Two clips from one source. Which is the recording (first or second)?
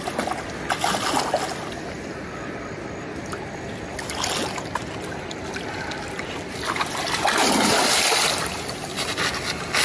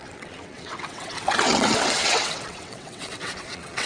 first